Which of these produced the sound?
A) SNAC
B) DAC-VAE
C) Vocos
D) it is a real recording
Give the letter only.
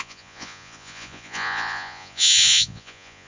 C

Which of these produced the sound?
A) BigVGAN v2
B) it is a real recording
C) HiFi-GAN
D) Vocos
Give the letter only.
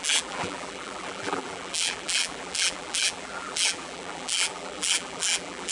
A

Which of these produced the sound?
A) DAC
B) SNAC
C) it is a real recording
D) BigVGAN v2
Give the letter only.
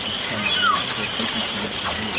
C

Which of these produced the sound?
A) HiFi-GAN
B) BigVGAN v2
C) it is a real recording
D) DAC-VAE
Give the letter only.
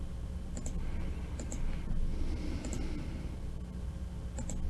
C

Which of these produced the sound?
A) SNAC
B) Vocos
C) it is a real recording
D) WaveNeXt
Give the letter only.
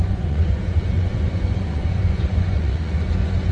B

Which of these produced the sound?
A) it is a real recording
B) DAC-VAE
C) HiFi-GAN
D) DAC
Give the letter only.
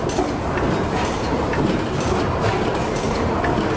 A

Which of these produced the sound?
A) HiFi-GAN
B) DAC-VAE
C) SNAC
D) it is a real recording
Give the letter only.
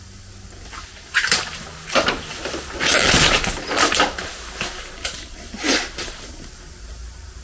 D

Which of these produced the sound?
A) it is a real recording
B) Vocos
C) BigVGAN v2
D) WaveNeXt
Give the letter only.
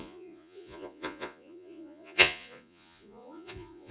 B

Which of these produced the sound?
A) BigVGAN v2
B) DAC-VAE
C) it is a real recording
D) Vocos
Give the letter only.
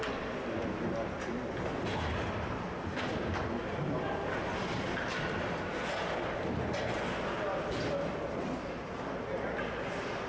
C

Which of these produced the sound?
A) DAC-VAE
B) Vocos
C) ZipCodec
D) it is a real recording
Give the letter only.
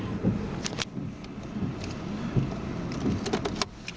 D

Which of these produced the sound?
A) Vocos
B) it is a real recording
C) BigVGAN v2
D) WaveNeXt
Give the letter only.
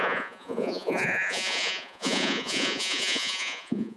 A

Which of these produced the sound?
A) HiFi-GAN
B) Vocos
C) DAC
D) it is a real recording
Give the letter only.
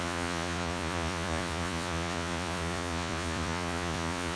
B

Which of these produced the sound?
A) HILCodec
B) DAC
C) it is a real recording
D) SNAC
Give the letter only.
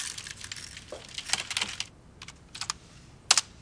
C